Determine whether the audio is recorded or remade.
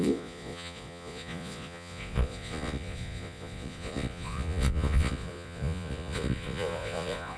remade